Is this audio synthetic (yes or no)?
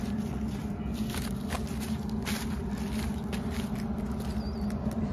no